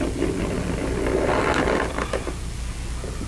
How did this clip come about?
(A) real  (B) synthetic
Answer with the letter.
A